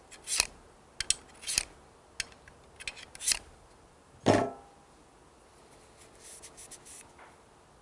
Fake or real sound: real